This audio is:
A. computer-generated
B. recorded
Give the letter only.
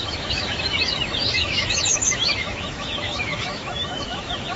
A